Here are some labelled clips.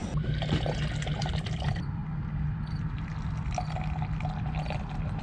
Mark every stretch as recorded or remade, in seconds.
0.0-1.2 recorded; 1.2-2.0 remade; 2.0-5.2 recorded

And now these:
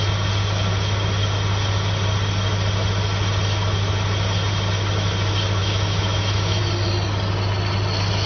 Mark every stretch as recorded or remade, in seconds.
0.0-5.6 recorded; 5.6-6.6 remade; 6.6-8.3 recorded